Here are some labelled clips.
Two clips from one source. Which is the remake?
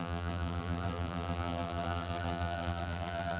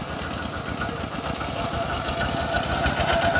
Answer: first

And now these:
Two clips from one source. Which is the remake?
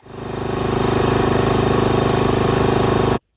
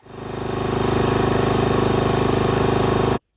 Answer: first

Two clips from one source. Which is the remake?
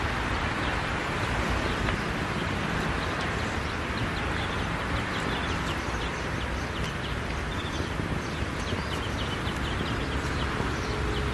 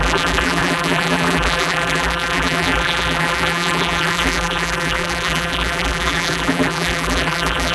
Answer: second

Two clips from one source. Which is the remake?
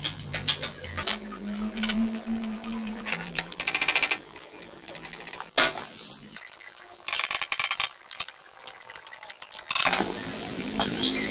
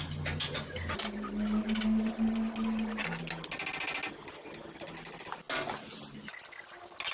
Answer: first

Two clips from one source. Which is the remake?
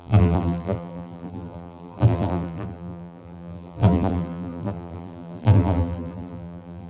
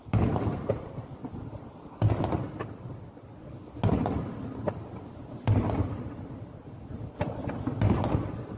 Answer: first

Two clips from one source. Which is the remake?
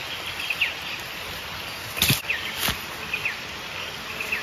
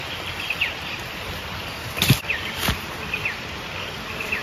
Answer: second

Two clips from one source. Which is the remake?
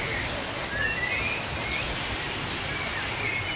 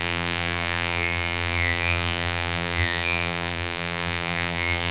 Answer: second